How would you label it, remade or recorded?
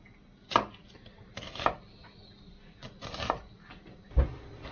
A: recorded